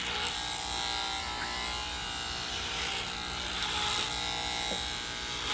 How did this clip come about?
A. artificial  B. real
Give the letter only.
B